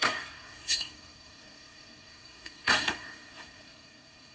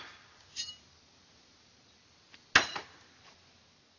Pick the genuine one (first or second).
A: second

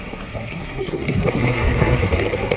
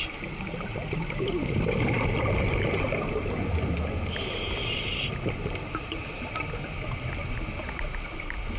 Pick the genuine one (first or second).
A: second